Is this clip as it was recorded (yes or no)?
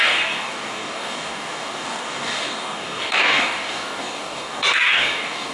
no